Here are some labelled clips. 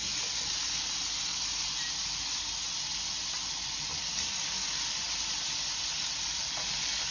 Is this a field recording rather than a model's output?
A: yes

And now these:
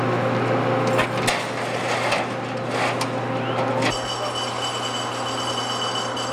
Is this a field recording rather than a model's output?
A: yes